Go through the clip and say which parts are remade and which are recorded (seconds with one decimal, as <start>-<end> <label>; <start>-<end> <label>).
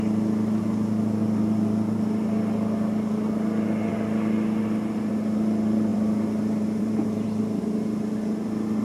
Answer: 0.0-5.9 recorded; 5.9-7.6 remade; 7.6-8.8 recorded